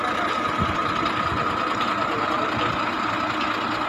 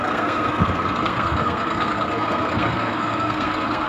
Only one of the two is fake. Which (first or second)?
second